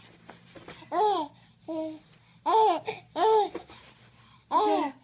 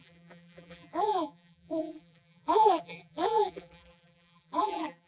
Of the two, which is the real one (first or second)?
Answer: first